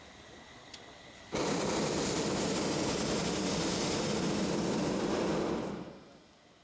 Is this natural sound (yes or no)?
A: yes